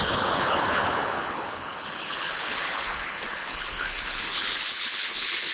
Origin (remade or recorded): remade